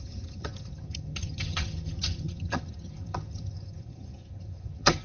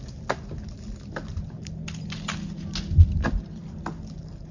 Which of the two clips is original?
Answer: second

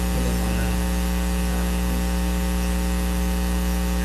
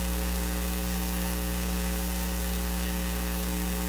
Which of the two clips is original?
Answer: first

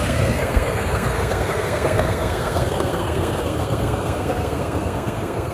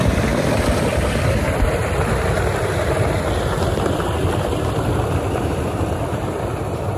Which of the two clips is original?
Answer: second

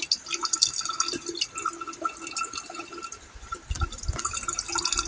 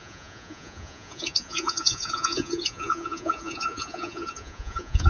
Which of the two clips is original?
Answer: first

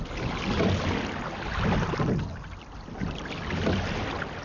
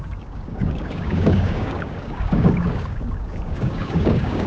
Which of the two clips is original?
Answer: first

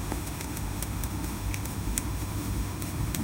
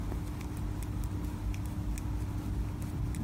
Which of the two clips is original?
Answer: second